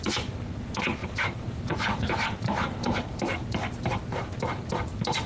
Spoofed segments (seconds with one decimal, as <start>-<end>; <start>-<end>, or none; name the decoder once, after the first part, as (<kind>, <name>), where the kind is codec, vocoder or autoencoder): 1.0-4.2 (vocoder, BigVGAN v2)